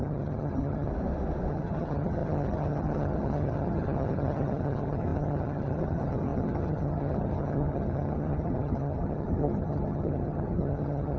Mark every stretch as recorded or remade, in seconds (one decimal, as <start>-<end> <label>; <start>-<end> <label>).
0.0-0.9 remade; 0.9-1.5 recorded; 1.5-11.2 remade